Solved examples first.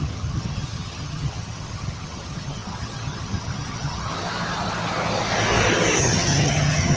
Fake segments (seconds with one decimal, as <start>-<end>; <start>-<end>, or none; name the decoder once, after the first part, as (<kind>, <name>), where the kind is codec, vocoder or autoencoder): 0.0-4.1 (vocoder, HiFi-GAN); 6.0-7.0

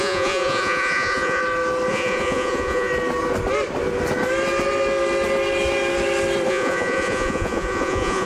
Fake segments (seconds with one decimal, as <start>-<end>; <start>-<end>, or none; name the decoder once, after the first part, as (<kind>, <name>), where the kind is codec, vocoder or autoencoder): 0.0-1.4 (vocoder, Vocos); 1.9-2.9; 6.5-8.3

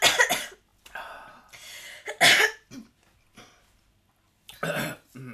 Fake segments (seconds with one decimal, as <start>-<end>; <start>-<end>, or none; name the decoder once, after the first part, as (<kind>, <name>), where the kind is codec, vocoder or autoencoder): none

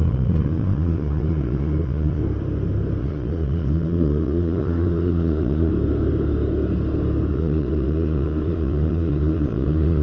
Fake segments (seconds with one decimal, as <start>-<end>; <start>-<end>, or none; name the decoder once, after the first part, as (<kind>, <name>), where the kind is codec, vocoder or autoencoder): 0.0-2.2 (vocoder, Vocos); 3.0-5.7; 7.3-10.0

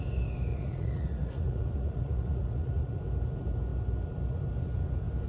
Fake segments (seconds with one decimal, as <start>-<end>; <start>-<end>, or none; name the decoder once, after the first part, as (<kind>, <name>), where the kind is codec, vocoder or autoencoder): 0.5-3.0 (vocoder, Vocos)

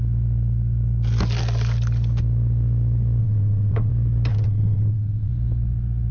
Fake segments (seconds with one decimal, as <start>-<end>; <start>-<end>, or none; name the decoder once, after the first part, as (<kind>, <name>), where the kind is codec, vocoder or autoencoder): 3.2-3.9 (vocoder, WaveNeXt); 4.3-5.3

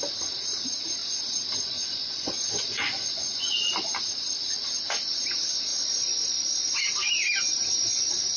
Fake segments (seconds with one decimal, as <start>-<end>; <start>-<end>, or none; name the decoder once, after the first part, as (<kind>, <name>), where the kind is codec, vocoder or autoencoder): 1.0-3.5 (vocoder, Vocos)

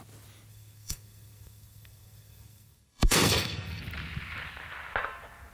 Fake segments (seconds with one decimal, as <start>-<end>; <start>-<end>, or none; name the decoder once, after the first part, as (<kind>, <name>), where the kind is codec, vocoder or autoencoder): 0.5-3.8 (codec, SNAC)